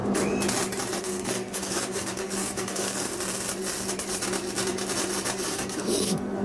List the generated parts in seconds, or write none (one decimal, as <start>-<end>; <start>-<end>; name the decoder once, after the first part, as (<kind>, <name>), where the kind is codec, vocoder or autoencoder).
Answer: 1.0-3.1 (codec, SNAC); 5.5-6.4